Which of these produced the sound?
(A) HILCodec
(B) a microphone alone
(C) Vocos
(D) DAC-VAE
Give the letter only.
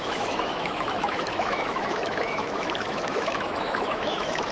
D